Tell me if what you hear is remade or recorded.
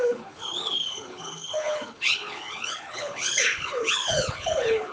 remade